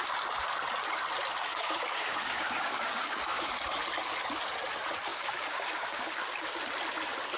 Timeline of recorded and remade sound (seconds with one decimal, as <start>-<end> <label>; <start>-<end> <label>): 0.0-1.5 recorded; 1.5-3.5 remade; 3.5-5.1 recorded; 5.1-6.5 remade; 6.5-7.4 recorded